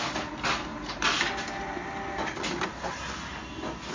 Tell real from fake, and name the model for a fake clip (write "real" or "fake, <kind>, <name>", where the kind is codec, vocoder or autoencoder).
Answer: real